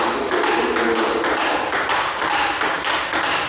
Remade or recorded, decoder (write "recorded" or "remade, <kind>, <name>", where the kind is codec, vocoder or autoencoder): recorded